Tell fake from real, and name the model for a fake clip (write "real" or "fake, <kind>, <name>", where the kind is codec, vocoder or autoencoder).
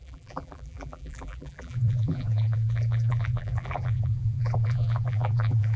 fake, vocoder, BigVGAN v2